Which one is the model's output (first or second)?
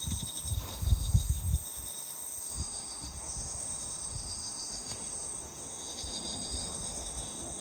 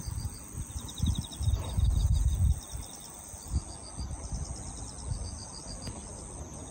first